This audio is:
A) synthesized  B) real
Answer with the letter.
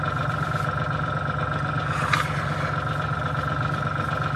B